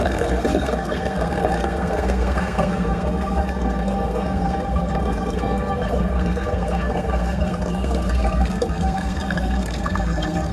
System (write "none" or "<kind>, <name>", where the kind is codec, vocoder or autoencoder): codec, SNAC